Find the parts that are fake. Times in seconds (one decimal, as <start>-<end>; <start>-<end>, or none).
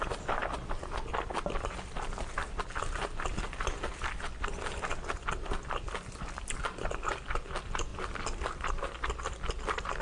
none